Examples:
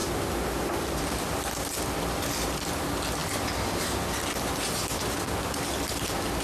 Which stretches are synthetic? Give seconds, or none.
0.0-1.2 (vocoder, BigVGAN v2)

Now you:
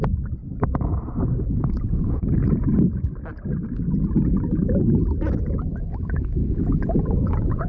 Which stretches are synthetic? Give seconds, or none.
0.0-0.4 (vocoder, Vocos); 1.9-2.7; 6.5-7.7

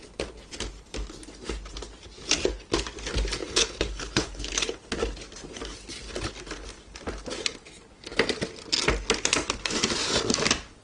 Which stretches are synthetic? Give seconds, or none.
3.4-4.8 (codec, HILCodec)

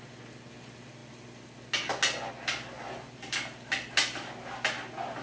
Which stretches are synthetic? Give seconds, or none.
none